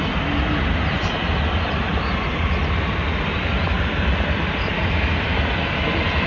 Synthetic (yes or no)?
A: no